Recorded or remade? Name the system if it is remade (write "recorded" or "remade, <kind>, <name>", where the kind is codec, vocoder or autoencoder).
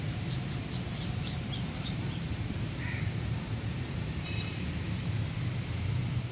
remade, vocoder, BigVGAN v2